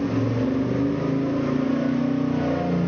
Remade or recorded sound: recorded